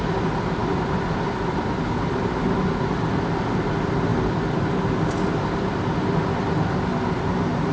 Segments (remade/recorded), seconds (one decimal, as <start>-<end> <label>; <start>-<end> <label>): 0.0-7.7 recorded